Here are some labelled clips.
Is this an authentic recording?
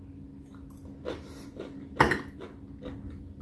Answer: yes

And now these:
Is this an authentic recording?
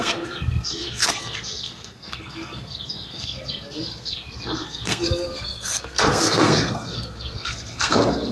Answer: no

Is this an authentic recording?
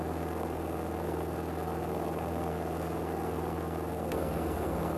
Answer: no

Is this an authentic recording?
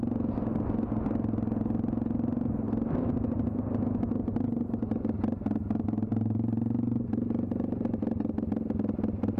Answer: yes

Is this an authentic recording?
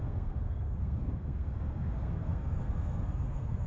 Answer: no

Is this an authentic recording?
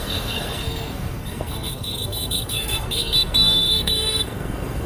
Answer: no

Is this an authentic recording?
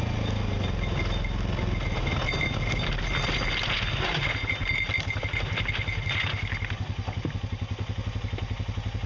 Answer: yes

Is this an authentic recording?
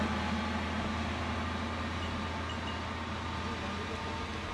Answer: yes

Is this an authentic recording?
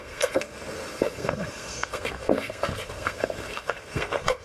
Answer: no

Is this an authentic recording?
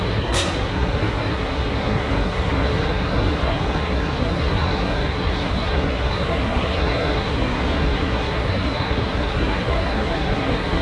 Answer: no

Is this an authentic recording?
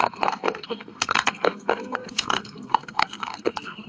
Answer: no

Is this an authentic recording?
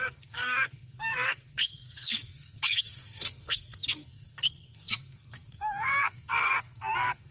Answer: no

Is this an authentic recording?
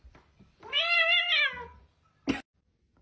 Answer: yes